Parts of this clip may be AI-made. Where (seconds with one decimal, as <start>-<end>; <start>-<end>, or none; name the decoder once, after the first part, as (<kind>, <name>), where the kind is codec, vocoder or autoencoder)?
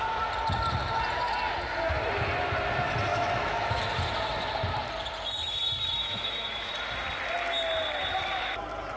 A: 3.1-3.8 (autoencoder, DAC-VAE); 6.0-6.7